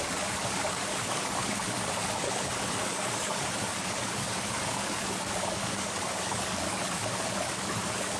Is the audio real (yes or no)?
no